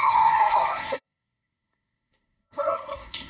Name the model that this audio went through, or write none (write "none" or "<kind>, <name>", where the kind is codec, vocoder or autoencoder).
codec, SNAC